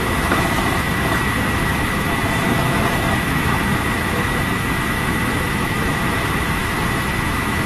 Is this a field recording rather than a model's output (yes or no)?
no